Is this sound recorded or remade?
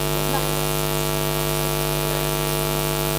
recorded